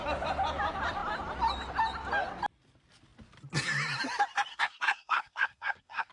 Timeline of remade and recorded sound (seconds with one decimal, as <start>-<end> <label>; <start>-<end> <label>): 0.0-4.5 recorded; 4.5-6.1 remade